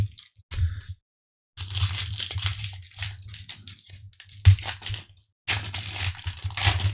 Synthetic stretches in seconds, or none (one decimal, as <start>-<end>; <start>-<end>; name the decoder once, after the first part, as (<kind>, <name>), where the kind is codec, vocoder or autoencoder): none